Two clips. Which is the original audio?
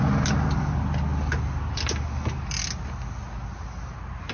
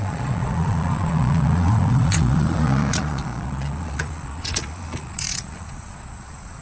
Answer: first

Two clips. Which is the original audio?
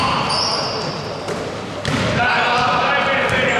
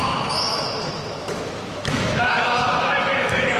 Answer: first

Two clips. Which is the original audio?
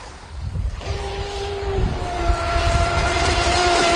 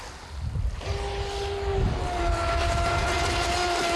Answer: second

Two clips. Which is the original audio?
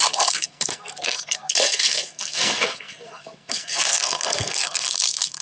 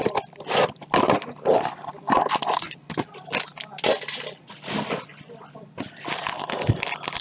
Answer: second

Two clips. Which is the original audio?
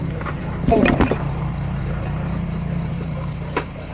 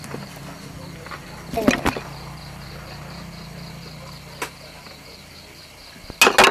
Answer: second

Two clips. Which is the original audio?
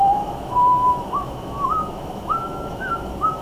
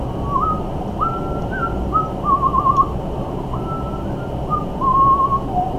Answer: second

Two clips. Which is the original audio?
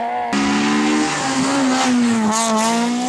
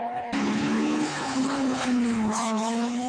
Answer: first